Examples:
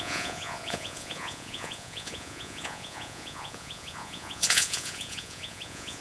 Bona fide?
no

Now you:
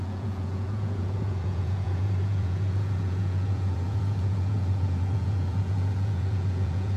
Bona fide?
no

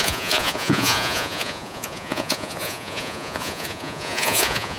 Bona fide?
no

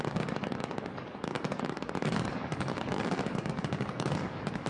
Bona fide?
no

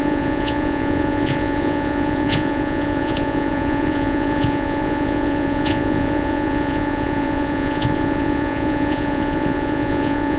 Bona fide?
no